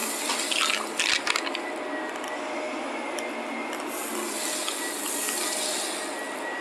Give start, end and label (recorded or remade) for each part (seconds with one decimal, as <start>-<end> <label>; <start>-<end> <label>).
0.0-6.6 recorded